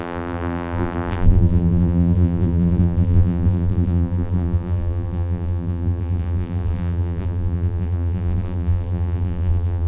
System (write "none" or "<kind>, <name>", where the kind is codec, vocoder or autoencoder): vocoder, BigVGAN v2